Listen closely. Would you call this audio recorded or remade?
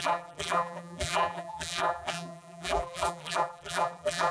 remade